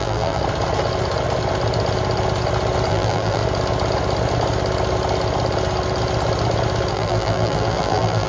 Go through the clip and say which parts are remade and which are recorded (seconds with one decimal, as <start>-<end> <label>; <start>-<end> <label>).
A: 0.0-0.4 remade; 0.4-2.9 recorded; 2.9-3.4 remade; 3.4-6.9 recorded; 6.9-8.3 remade